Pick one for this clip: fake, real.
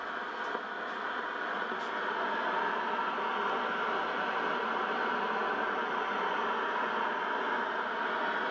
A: real